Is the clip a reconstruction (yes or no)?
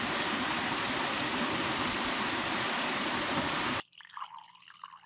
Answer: no